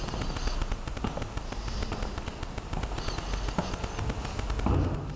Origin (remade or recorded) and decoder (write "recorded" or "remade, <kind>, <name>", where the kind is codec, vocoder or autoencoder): recorded